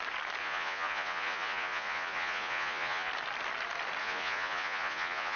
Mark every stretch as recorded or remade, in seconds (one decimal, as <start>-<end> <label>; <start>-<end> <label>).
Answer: 0.0-0.4 recorded; 0.4-3.1 remade; 3.1-4.0 recorded; 4.0-5.4 remade